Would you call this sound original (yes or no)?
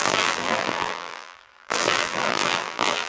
no